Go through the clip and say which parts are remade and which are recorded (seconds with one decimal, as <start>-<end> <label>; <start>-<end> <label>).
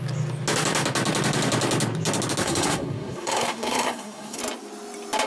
0.0-2.4 recorded; 2.4-4.4 remade; 4.4-5.3 recorded